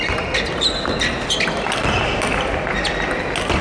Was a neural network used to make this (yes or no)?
no